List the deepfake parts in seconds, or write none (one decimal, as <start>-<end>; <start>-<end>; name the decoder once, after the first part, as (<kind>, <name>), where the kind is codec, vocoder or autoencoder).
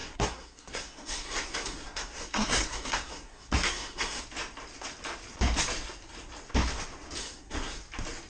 0.0-4.2 (codec, SNAC); 7.2-7.8